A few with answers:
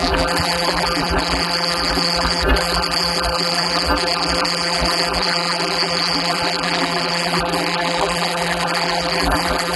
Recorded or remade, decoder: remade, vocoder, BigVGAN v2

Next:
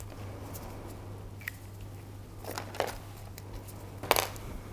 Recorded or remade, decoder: recorded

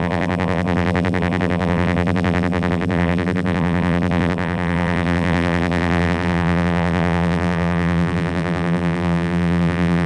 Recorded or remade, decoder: remade, vocoder, BigVGAN v2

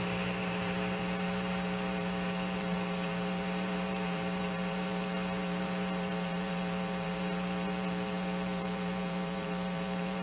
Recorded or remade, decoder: remade, vocoder, BigVGAN v2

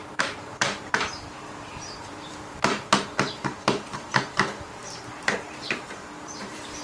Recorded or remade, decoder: remade, vocoder, BigVGAN v2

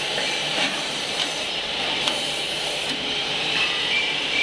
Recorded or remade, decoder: remade, vocoder, BigVGAN v2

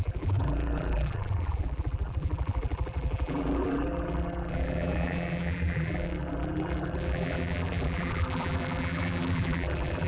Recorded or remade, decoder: remade, vocoder, BigVGAN v2